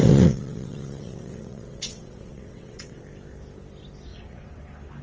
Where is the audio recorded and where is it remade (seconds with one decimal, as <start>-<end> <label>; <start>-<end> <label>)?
0.0-3.0 remade; 3.0-4.1 recorded; 4.1-4.6 remade; 4.6-5.0 recorded